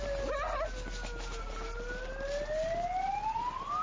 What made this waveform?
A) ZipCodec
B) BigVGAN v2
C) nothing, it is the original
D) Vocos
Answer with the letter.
C